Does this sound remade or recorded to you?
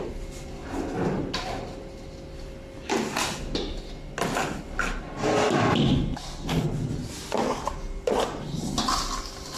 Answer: recorded